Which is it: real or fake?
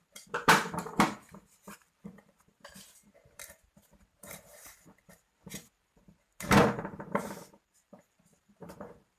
fake